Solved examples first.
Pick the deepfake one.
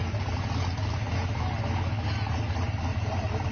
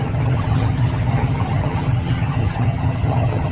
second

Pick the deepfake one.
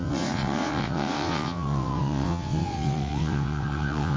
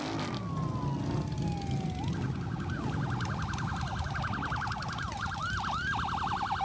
first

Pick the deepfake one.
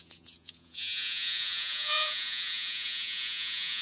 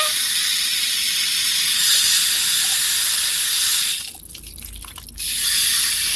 first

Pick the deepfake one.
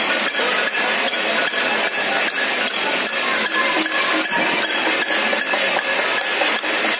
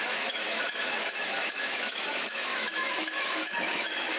second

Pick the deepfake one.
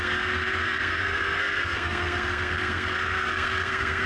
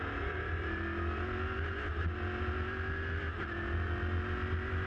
first